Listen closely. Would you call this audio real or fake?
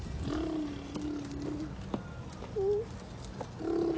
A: real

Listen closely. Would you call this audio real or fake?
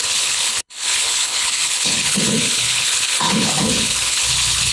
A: fake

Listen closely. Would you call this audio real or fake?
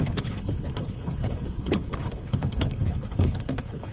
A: fake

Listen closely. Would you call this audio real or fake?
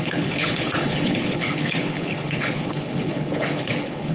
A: fake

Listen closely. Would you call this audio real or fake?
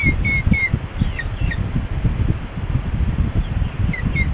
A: real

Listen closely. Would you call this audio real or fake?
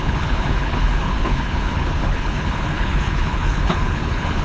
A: fake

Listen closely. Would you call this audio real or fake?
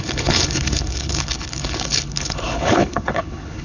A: fake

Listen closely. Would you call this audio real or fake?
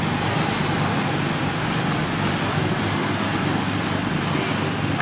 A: real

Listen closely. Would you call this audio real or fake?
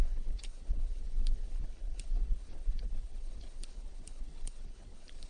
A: fake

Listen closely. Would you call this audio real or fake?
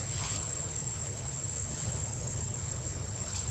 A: fake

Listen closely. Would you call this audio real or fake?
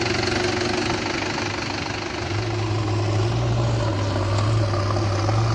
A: real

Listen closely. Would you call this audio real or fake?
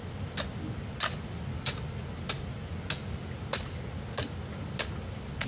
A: real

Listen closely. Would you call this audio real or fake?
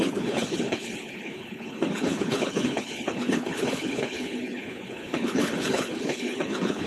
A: fake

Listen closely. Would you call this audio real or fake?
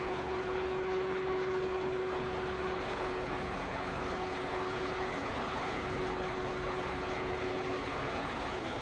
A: fake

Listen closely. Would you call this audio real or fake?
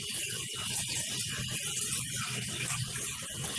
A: real